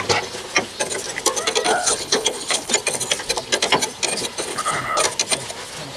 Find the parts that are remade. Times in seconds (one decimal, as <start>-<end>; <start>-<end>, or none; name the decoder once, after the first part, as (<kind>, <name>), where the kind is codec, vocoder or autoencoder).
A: 1.7-2.7 (codec, HILCodec); 4.5-5.0